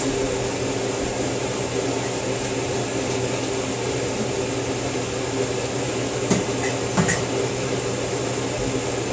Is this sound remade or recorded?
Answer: recorded